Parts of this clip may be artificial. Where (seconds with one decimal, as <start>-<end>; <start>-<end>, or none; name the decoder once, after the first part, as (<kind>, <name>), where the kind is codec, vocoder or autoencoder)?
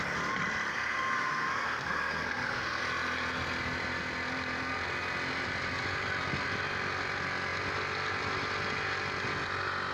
0.7-2.8 (codec, SNAC)